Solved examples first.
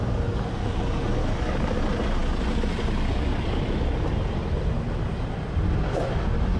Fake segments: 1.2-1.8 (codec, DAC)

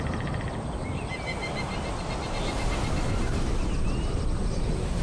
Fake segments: 0.8-2.0 (vocoder, BigVGAN v2)